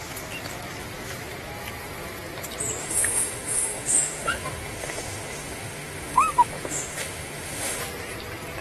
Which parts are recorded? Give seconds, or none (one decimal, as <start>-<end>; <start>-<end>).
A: 0.0-2.8; 7.8-8.6